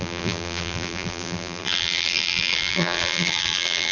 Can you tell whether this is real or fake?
fake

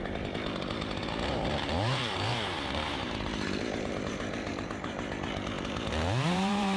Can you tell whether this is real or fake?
fake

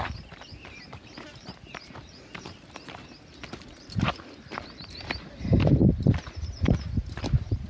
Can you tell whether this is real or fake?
fake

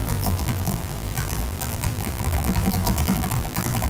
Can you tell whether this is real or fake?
fake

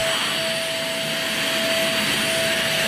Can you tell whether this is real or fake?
real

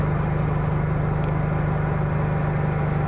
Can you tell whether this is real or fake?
real